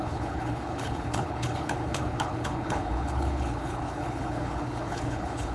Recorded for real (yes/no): no